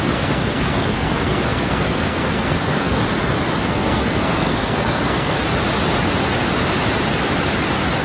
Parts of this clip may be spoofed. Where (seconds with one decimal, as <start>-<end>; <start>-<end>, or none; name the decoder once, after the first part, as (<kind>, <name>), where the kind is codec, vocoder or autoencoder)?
0.0-3.0 (codec, SNAC); 3.6-5.4